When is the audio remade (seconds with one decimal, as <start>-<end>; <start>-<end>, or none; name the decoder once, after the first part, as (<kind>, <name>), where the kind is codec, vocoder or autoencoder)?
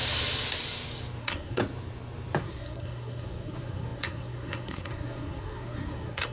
1.2-1.6 (codec, SNAC); 2.4-6.3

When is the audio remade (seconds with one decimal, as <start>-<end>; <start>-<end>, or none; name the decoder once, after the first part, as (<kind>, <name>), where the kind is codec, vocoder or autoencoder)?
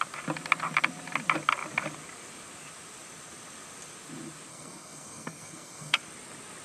4.5-6.0 (codec, SNAC)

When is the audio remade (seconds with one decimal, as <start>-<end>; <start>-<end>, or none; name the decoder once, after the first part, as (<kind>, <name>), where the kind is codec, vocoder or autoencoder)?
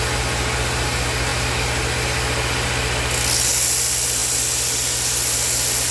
none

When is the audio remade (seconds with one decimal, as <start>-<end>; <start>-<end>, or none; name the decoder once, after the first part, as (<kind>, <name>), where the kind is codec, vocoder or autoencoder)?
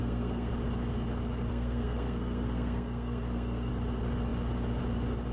0.0-0.5 (codec, SNAC); 1.5-3.7